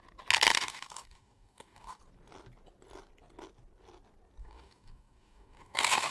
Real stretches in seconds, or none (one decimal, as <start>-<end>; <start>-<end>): 0.0-0.5; 2.0-4.4